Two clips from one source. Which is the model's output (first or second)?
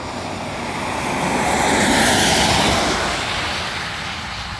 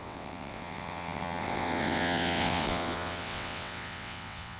second